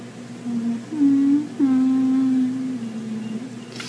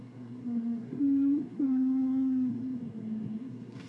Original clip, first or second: first